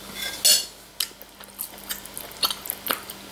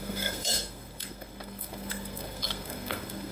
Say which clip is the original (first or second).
first